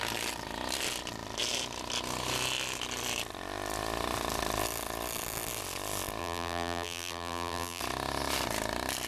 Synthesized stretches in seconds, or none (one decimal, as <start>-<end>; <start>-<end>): 6.2-7.8